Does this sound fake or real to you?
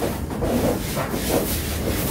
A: real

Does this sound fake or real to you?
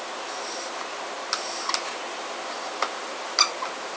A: real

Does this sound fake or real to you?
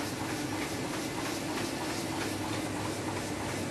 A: real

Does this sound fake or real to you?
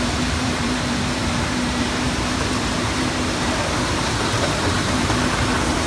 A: fake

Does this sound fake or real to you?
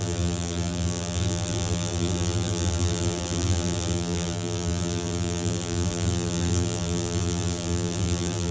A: fake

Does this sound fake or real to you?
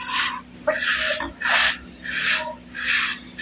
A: fake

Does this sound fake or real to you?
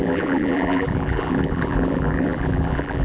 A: fake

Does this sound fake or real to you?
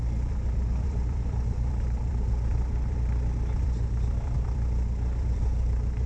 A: fake